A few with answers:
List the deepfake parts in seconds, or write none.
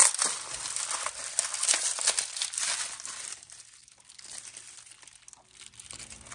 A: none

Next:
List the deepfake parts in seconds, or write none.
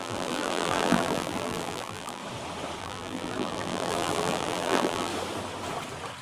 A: 0.0-2.2; 2.8-5.1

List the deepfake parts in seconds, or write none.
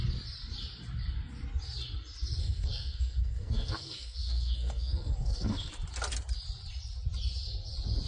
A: 2.4-5.7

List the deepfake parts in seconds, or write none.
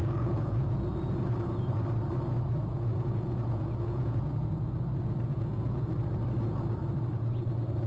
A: 0.0-1.7; 2.7-4.3; 5.3-5.9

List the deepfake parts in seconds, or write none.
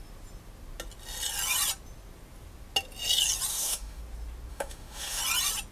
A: 3.5-4.0; 4.5-5.2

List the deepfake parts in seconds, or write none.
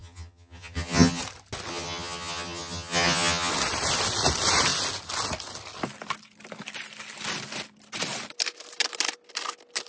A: 0.0-1.2; 1.7-3.5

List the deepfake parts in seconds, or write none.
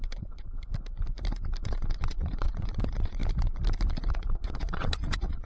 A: 0.0-0.7; 1.6-3.2; 4.1-5.5